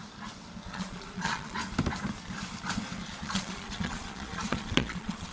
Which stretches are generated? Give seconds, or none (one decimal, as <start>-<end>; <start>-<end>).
0.7-1.6; 3.0-5.3